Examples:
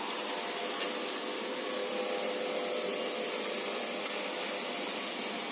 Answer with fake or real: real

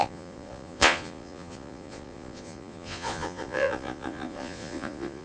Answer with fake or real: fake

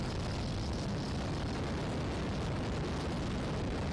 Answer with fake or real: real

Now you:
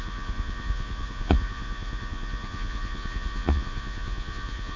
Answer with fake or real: fake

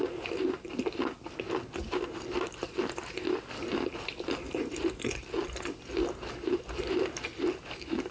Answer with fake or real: real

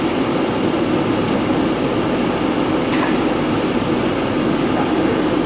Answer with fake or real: real